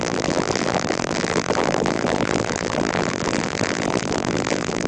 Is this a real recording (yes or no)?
no